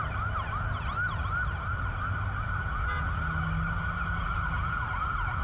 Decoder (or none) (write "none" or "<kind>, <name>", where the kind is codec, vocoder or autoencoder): none